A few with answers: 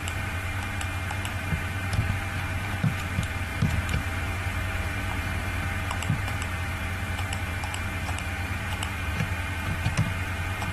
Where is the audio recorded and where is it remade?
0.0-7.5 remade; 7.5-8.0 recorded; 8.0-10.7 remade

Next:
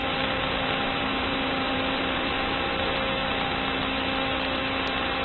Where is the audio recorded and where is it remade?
0.0-2.7 remade; 2.7-5.2 recorded

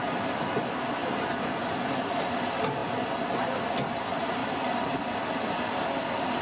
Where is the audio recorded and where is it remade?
0.0-1.0 recorded; 1.0-1.6 remade; 1.6-4.4 recorded; 4.4-5.8 remade; 5.8-6.4 recorded

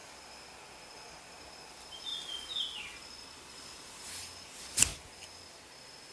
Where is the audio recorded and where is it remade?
0.0-6.1 recorded